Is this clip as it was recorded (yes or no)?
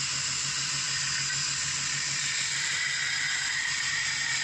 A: yes